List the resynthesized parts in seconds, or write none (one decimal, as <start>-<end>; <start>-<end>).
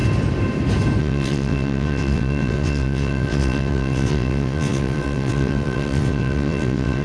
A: 1.0-7.0